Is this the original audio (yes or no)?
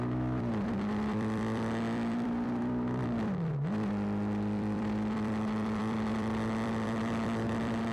no